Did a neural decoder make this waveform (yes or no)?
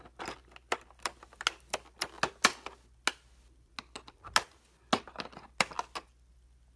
no